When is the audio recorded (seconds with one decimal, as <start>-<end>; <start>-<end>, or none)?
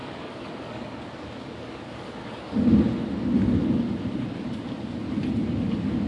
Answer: 2.6-6.1